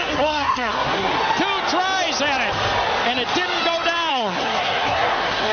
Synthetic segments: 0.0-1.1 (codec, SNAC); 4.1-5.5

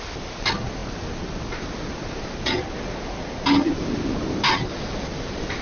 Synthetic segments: none

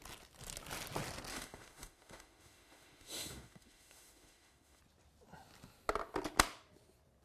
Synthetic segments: 1.3-4.8 (autoencoder, DAC-VAE)

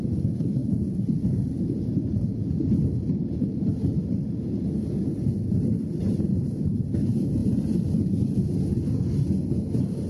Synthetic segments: none

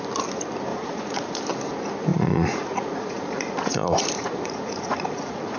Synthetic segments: 0.7-1.4 (vocoder, Vocos); 2.1-5.6

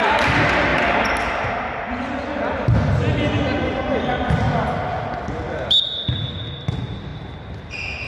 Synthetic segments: none